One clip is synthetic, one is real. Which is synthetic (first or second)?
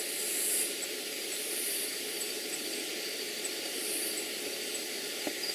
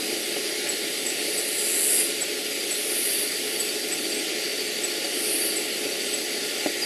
first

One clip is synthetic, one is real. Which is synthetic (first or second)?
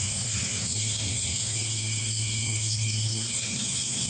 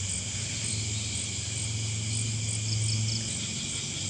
first